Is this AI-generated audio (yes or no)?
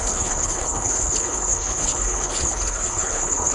yes